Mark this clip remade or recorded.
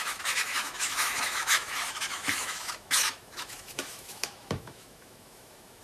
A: remade